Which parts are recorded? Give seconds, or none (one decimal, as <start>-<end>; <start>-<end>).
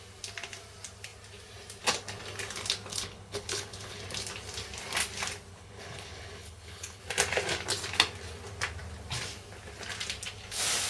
0.0-2.9; 4.0-5.5; 7.0-10.9